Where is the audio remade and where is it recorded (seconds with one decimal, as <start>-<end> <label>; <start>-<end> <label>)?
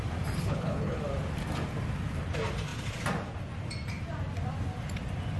0.0-0.4 recorded; 0.4-1.0 remade; 1.0-5.4 recorded